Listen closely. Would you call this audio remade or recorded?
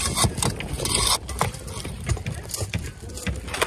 recorded